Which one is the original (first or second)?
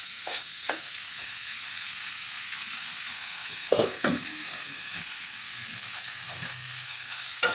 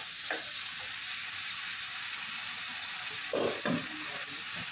second